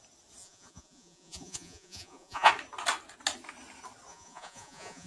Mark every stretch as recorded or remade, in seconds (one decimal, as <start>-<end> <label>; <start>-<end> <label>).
0.0-0.4 recorded; 0.4-2.5 remade; 2.5-4.1 recorded; 4.1-5.1 remade